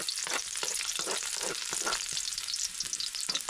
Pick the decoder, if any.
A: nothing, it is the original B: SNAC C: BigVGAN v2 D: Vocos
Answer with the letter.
A